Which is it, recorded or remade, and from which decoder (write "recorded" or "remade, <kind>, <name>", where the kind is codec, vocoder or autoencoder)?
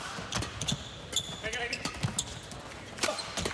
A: recorded